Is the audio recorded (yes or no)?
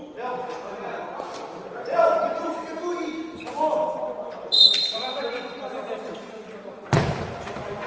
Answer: yes